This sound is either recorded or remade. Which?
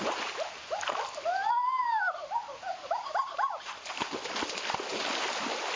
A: recorded